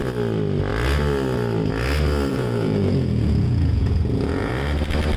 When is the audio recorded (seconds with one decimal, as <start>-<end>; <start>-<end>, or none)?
0.0-2.3; 4.5-5.2